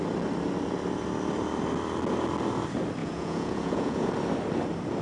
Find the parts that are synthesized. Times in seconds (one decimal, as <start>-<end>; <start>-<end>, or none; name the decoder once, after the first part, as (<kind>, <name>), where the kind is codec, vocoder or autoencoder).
3.0-4.1 (vocoder, Vocos)